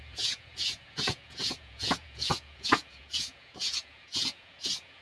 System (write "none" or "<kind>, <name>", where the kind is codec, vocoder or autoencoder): vocoder, Vocos